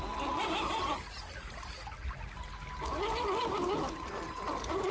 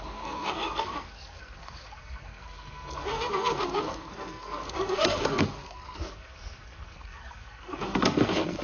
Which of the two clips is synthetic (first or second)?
second